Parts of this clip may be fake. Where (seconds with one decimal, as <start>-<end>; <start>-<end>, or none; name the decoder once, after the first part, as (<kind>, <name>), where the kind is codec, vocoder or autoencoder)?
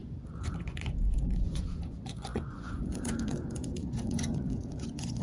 0.0-5.2 (vocoder, Vocos)